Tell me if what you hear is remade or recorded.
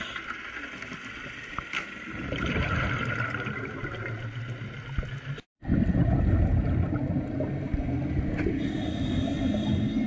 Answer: recorded